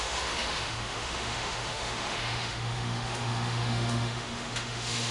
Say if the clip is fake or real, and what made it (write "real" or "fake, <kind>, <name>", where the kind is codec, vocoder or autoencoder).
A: fake, autoencoder, DAC-VAE